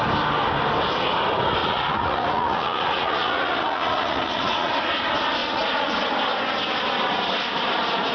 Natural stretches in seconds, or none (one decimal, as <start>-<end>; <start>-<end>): 0.0-1.6; 4.7-5.4; 6.0-8.1